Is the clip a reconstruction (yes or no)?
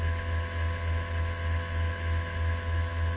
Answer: no